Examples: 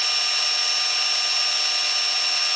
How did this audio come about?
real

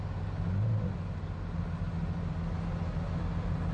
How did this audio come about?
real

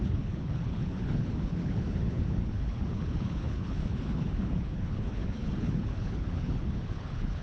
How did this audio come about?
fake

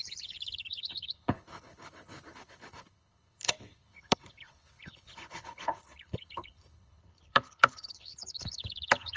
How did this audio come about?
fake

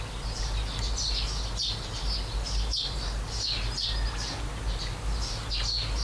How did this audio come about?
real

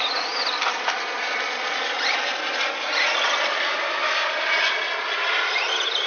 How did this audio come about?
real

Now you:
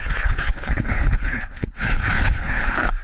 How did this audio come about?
fake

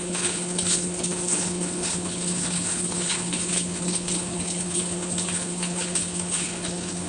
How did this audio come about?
fake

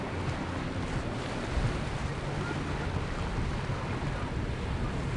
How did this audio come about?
real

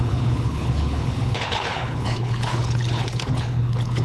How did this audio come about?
fake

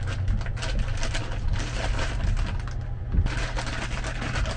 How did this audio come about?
real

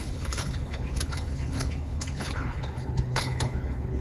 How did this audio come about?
fake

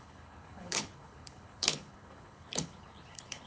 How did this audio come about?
fake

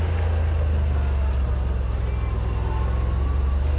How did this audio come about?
real